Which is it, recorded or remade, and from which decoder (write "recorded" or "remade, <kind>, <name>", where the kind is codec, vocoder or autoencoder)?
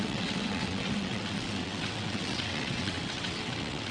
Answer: remade, vocoder, WaveNeXt